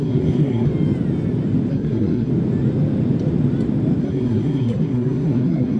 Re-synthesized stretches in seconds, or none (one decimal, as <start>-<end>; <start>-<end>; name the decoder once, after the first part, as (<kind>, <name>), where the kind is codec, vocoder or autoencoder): 0.0-0.7 (codec, SNAC); 1.7-2.3; 4.0-5.8